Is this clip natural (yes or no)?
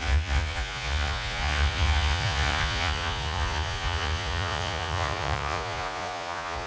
no